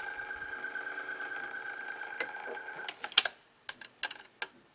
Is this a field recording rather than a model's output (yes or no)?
yes